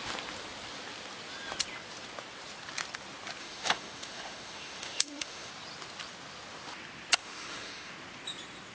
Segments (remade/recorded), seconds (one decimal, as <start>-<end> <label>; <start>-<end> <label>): 0.0-3.4 recorded; 3.4-5.5 remade; 5.5-7.2 recorded; 7.2-7.9 remade; 7.9-8.7 recorded